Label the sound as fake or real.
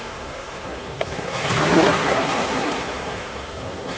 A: fake